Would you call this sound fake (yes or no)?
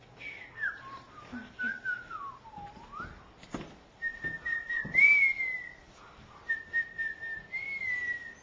no